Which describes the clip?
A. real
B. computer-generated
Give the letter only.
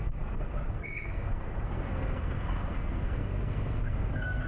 B